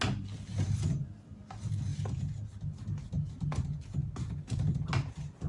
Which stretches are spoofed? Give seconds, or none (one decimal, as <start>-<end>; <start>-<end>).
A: none